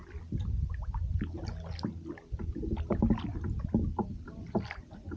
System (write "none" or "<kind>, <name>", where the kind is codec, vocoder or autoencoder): none